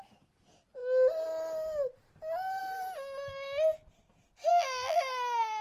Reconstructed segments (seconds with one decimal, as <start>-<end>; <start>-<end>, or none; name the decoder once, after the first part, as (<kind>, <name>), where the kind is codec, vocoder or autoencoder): 4.5-5.0 (vocoder, BigVGAN v2)